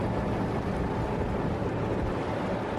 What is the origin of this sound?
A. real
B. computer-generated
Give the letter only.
A